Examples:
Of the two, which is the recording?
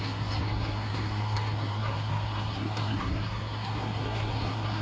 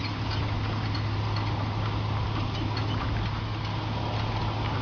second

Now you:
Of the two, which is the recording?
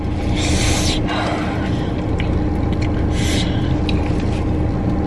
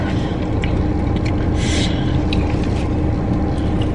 first